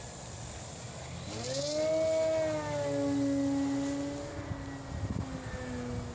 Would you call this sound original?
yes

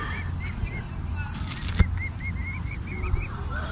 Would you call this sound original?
yes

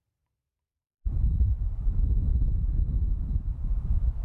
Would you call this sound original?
no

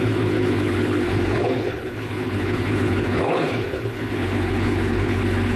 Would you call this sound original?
no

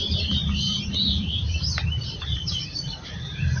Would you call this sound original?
no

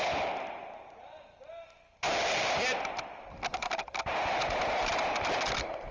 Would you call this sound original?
yes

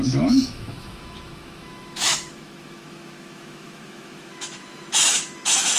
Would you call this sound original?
no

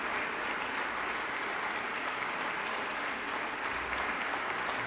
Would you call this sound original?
yes